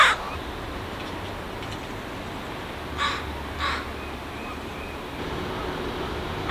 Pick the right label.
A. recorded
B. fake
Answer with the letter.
A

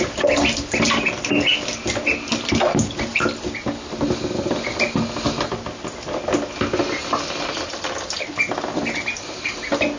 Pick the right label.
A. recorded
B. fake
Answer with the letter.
A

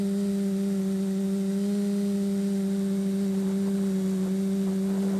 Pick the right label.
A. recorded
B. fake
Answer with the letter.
A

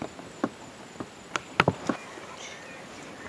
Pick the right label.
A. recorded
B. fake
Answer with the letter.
A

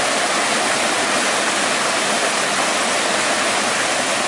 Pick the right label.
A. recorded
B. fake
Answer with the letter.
A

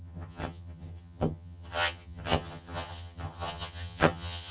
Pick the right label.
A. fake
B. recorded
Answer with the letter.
A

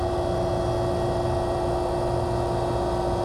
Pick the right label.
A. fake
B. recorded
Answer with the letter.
B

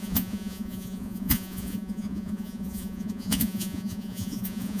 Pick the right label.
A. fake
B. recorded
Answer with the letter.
A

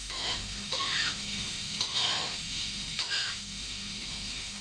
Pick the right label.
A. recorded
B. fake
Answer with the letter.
B